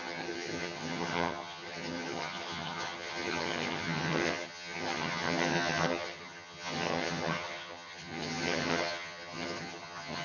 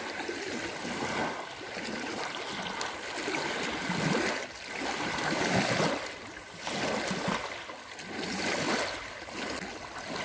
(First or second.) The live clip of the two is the second